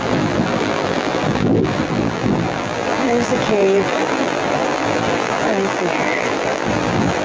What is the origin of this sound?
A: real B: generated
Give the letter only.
B